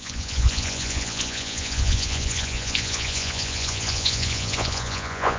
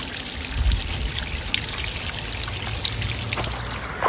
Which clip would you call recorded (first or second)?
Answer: second